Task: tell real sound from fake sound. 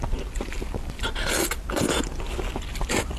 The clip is real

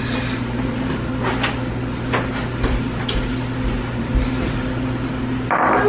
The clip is real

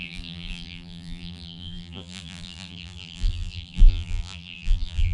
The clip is fake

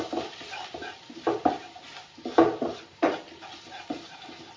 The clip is real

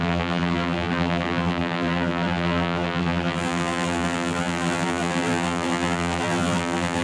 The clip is fake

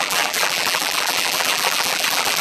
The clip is fake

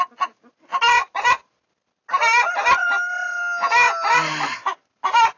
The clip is real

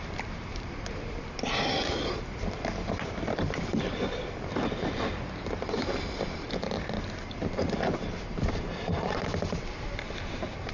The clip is fake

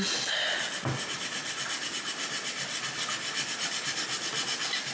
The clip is real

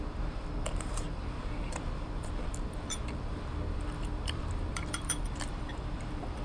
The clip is fake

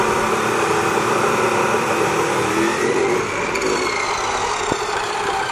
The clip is fake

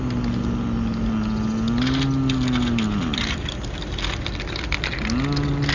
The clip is real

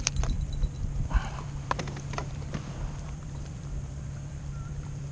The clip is fake